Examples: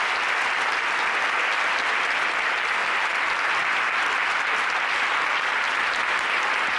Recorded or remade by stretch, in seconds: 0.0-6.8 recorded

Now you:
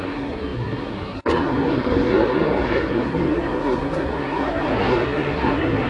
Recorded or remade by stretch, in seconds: 0.0-5.9 remade

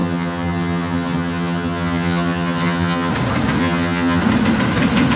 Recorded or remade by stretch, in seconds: 0.0-3.1 remade; 3.1-3.6 recorded; 3.6-4.2 remade; 4.2-5.2 recorded